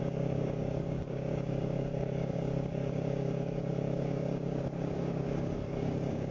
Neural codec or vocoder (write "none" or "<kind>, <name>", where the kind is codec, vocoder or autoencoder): codec, DAC